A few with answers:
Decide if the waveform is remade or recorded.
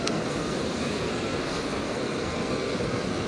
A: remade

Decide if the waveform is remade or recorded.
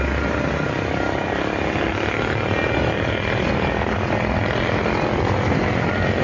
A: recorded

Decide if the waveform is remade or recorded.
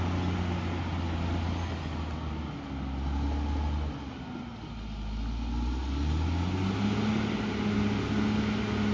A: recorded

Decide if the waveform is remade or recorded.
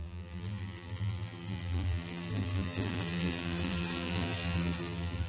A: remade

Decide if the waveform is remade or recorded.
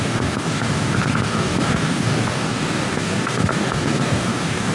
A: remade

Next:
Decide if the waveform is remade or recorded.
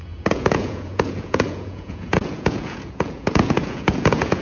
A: remade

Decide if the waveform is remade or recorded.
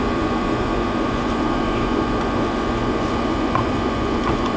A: remade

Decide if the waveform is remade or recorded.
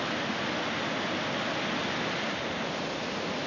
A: recorded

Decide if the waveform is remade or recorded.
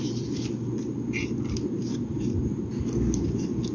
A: recorded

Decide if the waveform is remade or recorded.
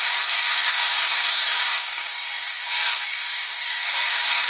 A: remade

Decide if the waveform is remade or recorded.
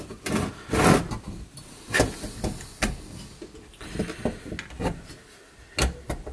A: recorded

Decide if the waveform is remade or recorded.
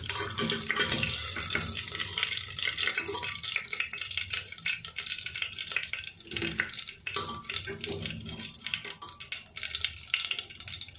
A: recorded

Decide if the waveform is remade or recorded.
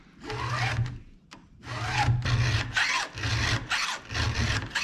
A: recorded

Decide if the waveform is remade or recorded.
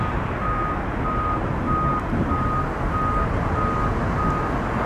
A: recorded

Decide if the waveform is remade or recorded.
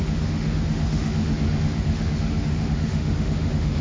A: remade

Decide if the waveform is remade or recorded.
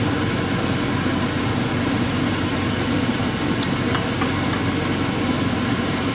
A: recorded